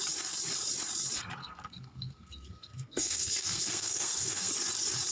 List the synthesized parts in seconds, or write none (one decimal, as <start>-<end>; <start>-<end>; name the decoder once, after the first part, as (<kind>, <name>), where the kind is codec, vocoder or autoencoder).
1.4-4.5 (codec, SNAC)